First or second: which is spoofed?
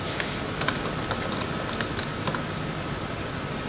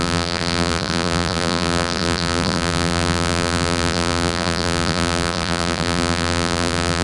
second